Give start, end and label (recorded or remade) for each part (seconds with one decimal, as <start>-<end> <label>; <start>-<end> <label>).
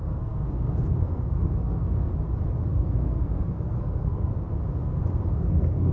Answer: 0.0-2.1 remade; 2.1-2.7 recorded; 2.7-4.3 remade; 4.3-5.3 recorded; 5.3-5.9 remade